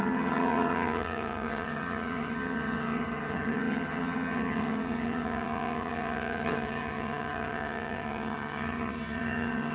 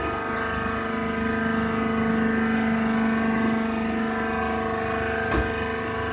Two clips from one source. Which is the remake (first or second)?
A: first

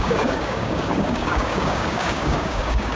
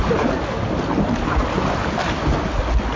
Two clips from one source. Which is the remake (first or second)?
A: first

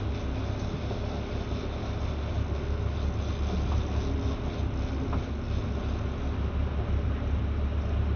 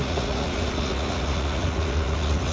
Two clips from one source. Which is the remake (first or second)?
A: second